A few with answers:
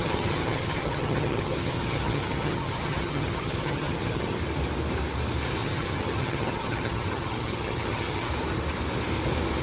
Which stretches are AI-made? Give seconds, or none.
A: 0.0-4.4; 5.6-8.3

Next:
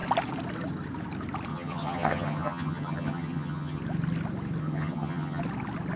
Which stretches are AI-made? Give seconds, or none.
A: 1.5-3.8; 4.6-5.4

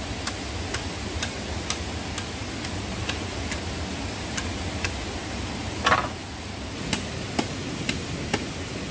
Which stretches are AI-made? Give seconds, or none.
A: none